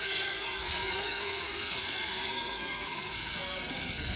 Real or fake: fake